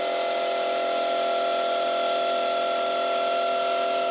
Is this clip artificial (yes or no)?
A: no